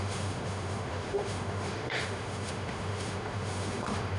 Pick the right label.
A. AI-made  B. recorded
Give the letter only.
A